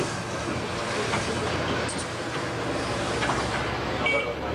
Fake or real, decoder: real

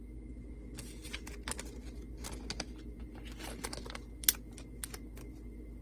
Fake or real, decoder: real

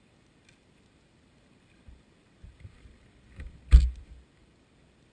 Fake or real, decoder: real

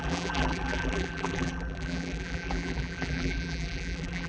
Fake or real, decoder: fake, vocoder, BigVGAN v2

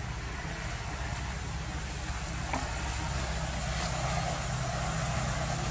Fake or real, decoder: real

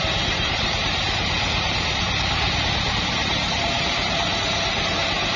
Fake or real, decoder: fake, vocoder, BigVGAN v2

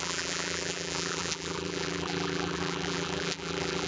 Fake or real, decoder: fake, vocoder, BigVGAN v2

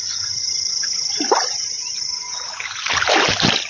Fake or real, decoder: real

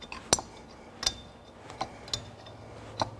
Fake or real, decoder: real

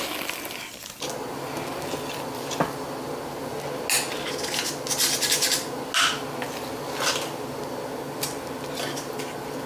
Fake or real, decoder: real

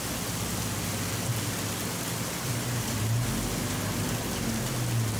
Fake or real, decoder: real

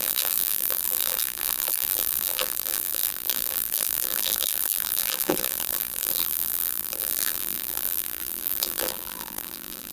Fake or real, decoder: fake, vocoder, BigVGAN v2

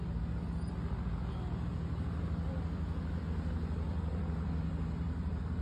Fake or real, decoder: real